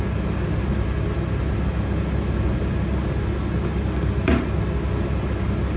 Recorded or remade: recorded